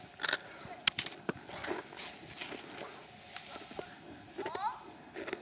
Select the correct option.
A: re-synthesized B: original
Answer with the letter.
B